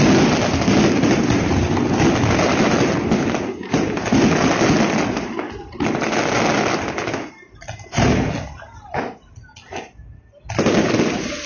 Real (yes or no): yes